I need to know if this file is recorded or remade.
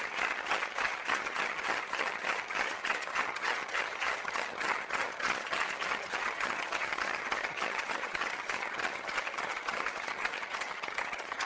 remade